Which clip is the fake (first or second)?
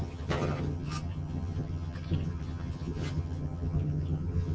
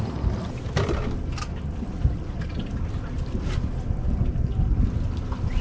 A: first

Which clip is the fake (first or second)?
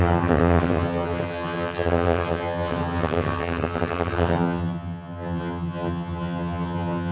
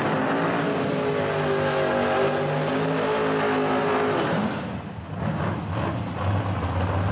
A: first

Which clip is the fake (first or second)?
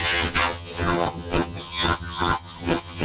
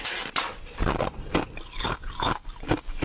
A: first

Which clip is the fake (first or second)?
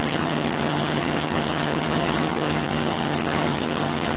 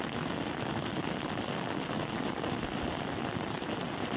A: first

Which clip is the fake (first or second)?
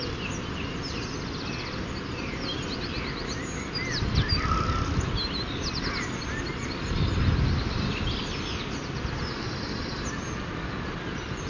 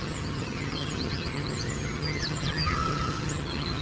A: second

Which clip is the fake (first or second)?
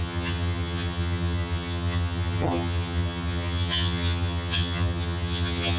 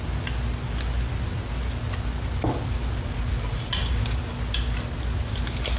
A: first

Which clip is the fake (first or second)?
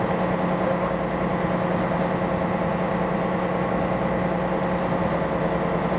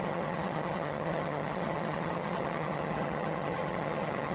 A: second